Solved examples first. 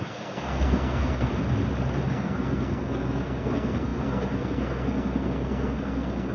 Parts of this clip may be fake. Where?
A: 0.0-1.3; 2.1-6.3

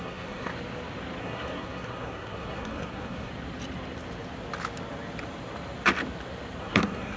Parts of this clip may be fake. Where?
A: 0.0-0.5; 1.2-3.3; 6.6-7.2

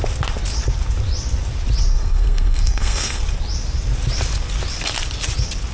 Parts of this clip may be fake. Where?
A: 1.9-3.2

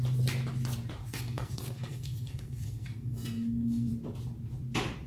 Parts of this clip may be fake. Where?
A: 1.0-3.9

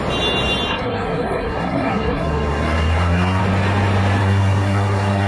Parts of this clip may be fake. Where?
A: 0.7-3.4; 4.2-5.3